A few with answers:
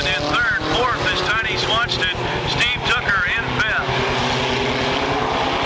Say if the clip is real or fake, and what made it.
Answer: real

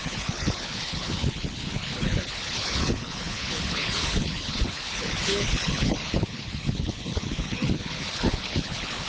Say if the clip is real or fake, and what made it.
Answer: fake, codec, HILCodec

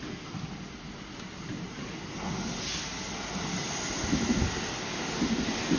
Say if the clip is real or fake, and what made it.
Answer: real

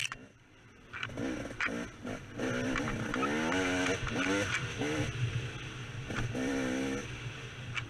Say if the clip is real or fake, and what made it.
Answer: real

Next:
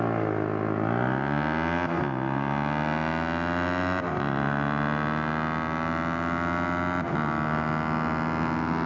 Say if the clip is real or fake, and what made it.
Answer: real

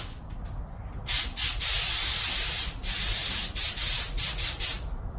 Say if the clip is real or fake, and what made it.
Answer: real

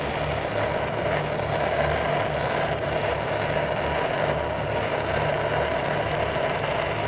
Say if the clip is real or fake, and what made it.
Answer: real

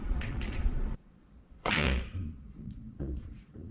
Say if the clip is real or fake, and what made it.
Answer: fake, vocoder, Vocos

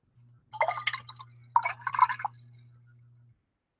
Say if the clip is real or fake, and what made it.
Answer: real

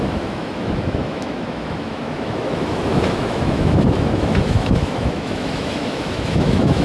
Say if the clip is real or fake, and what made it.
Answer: fake, autoencoder, DAC-VAE